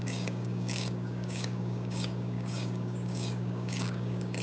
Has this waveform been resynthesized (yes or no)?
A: yes